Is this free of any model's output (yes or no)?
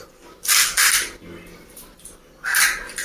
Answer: no